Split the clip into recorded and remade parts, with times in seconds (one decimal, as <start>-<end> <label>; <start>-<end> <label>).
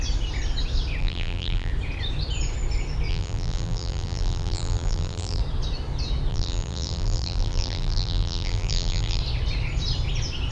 0.0-1.0 recorded; 1.0-1.7 remade; 1.7-3.1 recorded; 3.1-5.4 remade; 5.4-6.3 recorded; 6.3-9.2 remade; 9.2-10.5 recorded